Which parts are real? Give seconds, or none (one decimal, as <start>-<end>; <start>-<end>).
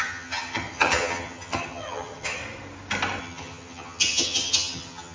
2.4-3.2